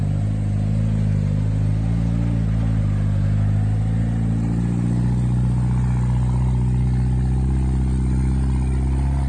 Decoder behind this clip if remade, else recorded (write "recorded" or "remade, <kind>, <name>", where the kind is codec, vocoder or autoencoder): recorded